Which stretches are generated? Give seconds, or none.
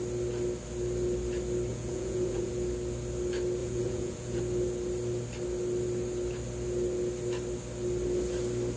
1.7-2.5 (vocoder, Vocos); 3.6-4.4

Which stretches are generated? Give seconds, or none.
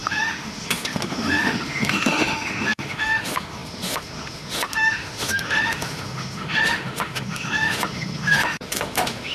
0.0-9.3 (autoencoder, DAC-VAE)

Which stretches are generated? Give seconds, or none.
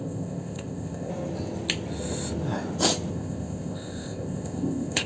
0.0-1.1 (codec, ZipCodec); 3.1-5.1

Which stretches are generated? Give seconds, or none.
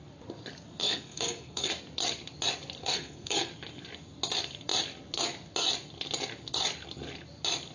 0.8-1.7 (codec, SNAC); 2.8-3.5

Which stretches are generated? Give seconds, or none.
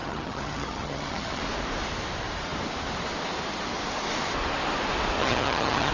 0.0-1.4 (vocoder, HiFi-GAN); 5.2-5.9